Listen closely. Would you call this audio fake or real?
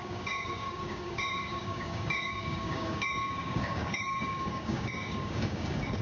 fake